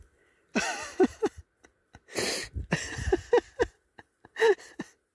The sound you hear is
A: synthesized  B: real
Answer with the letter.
B